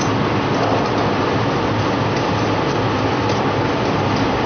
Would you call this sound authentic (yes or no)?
yes